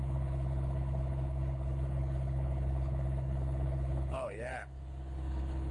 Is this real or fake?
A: fake